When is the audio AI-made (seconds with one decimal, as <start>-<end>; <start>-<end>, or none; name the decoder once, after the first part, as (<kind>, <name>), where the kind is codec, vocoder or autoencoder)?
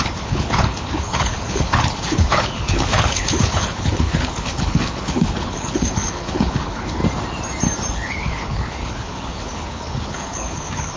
0.0-7.0 (codec, HILCodec); 7.9-11.0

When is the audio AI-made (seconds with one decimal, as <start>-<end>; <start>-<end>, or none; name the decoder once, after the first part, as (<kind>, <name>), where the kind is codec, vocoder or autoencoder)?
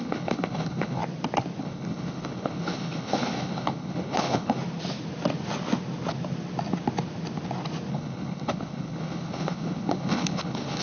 0.0-1.0 (codec, HILCodec); 1.6-4.6; 7.9-10.8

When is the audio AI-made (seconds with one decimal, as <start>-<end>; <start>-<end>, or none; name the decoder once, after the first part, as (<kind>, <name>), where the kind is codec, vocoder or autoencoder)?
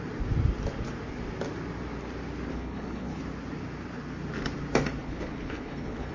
2.5-3.2 (codec, HILCodec); 5.0-6.1